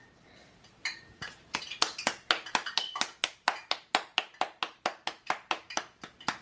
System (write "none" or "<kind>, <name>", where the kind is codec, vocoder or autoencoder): none